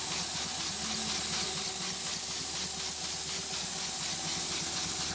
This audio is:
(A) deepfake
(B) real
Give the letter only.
B